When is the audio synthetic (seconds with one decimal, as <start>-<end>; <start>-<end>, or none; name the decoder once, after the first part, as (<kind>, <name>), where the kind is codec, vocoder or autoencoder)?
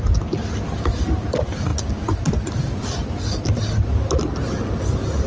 none